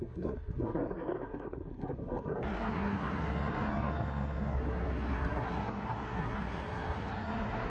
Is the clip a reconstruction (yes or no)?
yes